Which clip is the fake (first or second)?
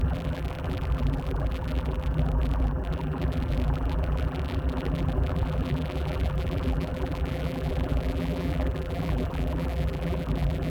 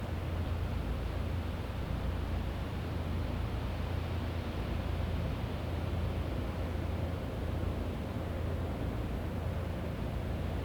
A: first